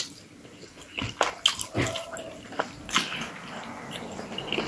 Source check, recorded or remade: recorded